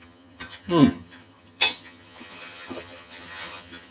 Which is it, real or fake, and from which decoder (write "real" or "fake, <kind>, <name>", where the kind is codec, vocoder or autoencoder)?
fake, vocoder, HiFi-GAN